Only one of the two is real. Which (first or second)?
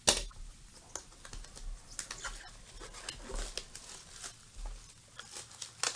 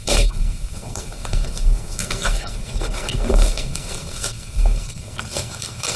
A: first